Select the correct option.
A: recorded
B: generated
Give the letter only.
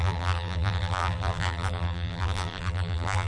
B